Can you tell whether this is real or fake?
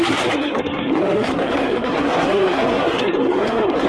fake